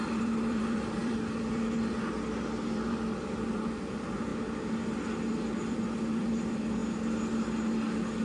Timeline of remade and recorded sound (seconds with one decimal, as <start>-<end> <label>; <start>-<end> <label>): 0.0-4.3 remade; 4.3-5.7 recorded; 5.7-6.8 remade; 6.8-8.2 recorded